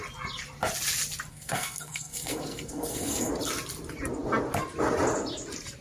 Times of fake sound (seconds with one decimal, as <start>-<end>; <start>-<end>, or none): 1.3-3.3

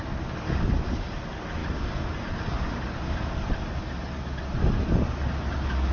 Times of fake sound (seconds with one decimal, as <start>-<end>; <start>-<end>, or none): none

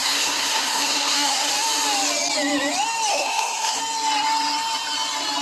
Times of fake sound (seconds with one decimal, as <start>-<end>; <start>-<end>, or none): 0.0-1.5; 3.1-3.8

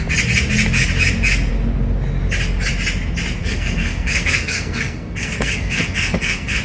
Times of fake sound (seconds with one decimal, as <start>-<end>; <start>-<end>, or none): 3.4-6.6

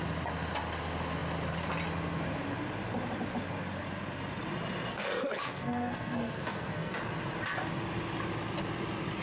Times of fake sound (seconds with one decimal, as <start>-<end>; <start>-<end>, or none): 4.9-7.0

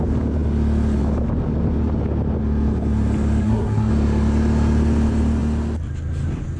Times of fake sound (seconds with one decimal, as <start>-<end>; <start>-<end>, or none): 3.4-3.9

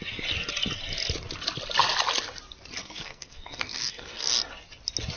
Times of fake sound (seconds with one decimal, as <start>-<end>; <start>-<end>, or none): 2.8-4.3